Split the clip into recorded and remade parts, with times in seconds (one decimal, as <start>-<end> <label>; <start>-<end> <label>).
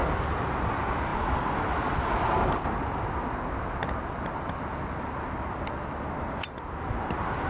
0.0-7.5 recorded